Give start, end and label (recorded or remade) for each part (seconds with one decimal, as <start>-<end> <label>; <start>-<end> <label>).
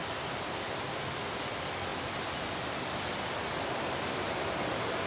0.0-5.1 recorded